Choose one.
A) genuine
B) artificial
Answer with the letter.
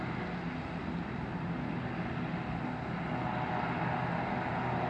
A